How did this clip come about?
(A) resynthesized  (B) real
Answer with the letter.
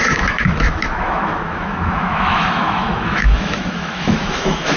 A